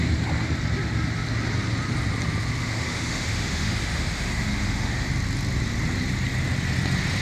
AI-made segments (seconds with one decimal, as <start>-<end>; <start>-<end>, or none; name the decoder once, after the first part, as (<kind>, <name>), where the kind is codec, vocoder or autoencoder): 2.6-5.1 (autoencoder, DAC-VAE)